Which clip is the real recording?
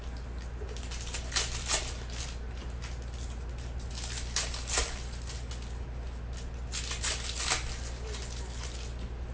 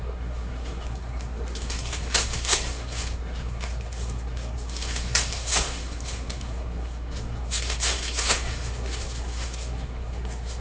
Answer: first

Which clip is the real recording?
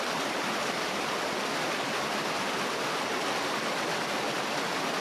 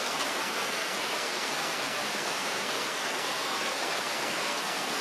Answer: first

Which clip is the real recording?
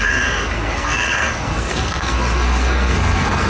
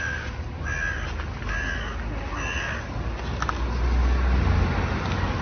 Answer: second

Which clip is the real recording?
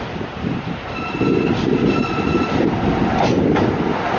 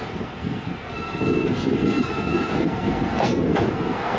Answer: first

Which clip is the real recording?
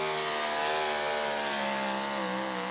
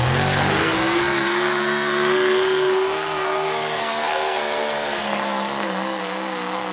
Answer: first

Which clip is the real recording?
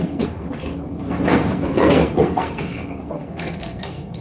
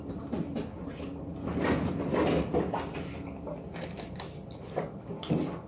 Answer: second